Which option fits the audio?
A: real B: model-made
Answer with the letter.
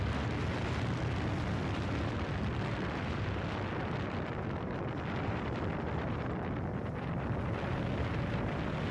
B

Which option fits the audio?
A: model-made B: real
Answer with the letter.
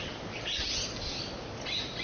B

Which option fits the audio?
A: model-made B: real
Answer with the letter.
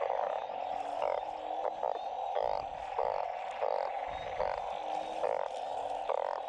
B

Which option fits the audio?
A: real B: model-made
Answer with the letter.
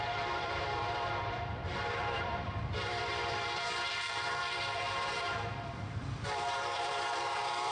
B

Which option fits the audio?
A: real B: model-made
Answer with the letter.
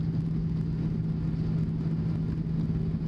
A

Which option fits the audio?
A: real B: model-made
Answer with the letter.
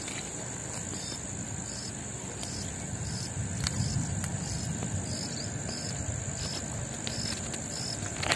A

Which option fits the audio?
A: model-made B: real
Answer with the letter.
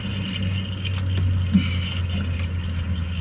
B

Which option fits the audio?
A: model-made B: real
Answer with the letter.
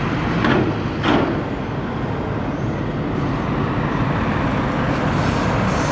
B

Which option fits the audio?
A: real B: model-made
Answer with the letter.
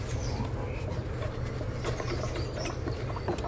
A